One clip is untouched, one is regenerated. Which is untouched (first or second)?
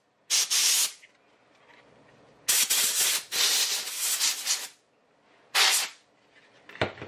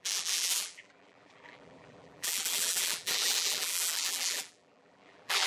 first